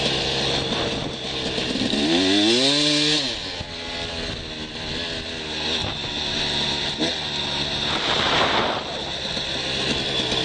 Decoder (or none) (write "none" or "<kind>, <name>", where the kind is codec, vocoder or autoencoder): none